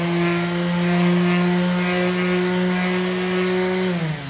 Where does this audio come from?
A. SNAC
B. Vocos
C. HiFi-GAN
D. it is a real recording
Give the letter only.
D